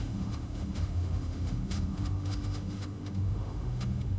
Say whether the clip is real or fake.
fake